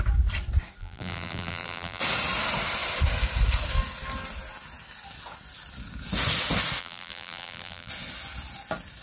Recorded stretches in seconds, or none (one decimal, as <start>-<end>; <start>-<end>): 0.0-0.8; 2.0-6.8; 7.9-9.0